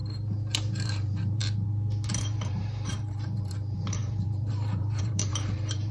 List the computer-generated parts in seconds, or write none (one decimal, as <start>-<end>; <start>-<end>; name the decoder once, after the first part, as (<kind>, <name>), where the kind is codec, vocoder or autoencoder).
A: 0.7-1.4 (vocoder, BigVGAN v2); 2.1-5.9